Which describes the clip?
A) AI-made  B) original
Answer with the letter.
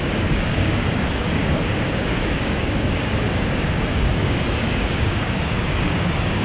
A